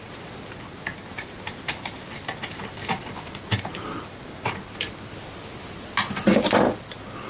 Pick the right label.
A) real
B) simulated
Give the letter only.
B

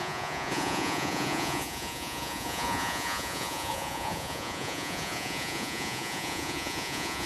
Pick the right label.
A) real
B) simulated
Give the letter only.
B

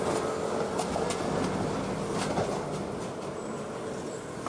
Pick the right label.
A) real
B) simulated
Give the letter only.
A